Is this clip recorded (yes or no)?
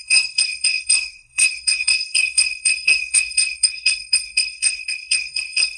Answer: no